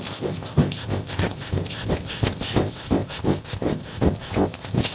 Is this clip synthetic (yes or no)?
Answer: yes